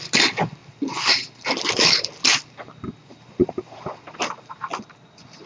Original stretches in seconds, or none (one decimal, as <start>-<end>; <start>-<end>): 0.0-0.6; 2.2-3.0; 4.6-5.5